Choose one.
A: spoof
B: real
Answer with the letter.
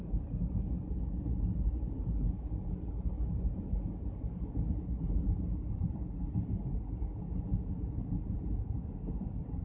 B